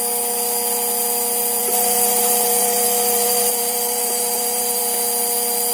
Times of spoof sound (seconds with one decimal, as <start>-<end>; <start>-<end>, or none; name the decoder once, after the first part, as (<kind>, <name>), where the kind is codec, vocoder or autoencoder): 1.6-4.8 (vocoder, BigVGAN v2)